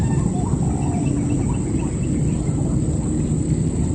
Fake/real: real